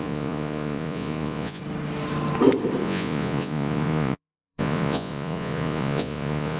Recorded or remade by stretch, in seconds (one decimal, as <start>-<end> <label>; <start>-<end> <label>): 0.0-1.6 remade; 1.6-2.8 recorded; 2.8-6.6 remade